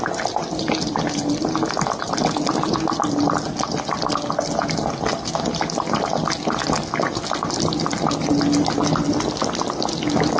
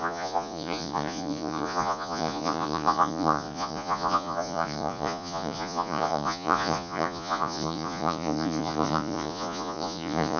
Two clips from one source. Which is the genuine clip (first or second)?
first